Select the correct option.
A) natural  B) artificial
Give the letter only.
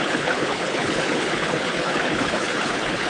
B